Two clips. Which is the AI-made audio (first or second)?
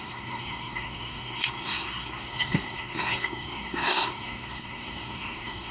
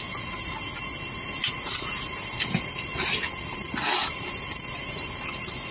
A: first